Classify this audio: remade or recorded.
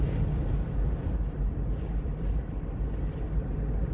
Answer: recorded